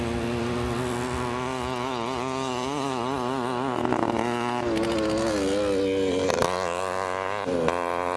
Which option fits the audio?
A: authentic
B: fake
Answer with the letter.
A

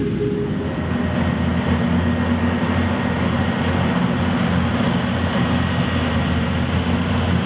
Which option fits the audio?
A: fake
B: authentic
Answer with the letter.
B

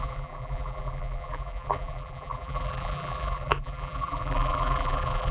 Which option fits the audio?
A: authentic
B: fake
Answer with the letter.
B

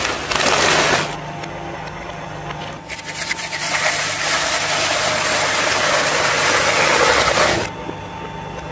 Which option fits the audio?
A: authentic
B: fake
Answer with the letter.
A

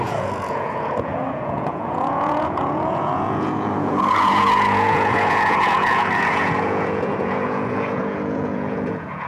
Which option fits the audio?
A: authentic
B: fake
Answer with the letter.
B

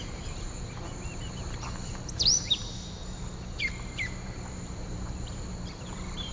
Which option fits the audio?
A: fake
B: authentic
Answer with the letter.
A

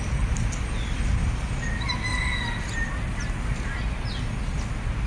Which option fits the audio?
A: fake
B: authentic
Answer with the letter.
B